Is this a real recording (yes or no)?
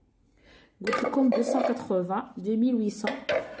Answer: yes